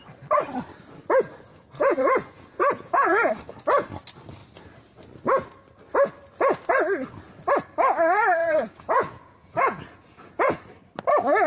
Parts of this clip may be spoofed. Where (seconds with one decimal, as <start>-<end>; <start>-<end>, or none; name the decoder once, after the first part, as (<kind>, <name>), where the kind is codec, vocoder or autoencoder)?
1.5-3.3 (vocoder, Vocos); 8.4-10.6